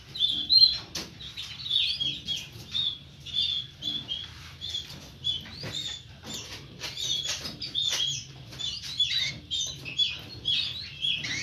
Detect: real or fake real